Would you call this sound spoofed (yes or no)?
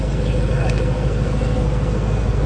yes